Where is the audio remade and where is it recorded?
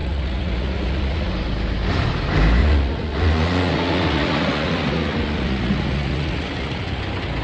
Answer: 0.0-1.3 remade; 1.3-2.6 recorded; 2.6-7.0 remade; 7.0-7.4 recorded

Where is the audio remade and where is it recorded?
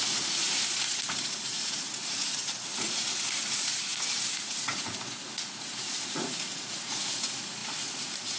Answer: 0.0-8.4 remade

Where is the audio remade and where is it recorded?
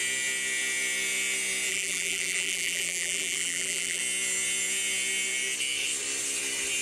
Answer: 0.0-1.7 recorded; 1.7-4.0 remade; 4.0-6.8 recorded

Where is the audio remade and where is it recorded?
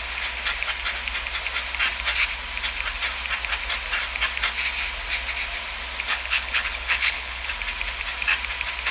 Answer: 0.0-6.1 recorded; 6.1-7.5 remade; 7.5-8.9 recorded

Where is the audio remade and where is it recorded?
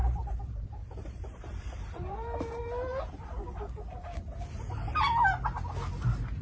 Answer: 0.0-2.6 remade; 2.6-6.4 recorded